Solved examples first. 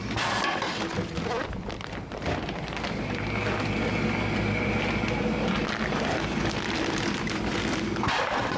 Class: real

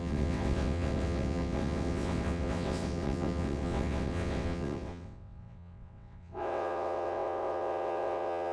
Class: fake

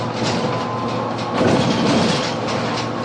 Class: real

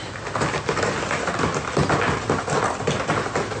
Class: real